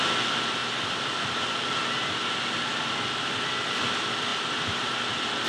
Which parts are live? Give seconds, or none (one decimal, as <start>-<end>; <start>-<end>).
0.0-0.6; 1.2-4.3; 4.9-5.5